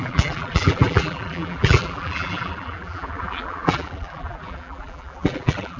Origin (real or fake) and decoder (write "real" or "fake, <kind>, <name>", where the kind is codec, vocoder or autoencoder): fake, vocoder, BigVGAN v2